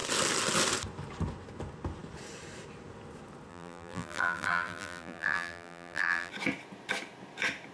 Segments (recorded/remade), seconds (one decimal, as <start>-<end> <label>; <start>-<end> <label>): 0.0-3.5 recorded; 3.5-6.3 remade; 6.3-7.7 recorded